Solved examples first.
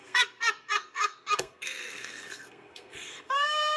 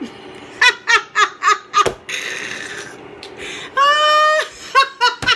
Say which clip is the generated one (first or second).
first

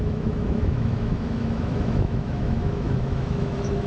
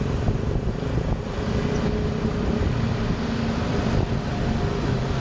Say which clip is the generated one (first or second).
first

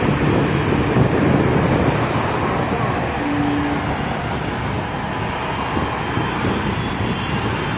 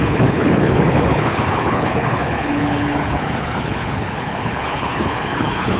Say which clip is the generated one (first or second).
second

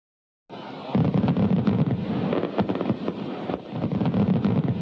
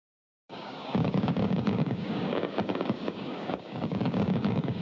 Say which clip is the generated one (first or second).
second